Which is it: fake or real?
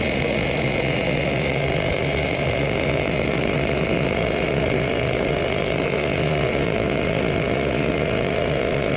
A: fake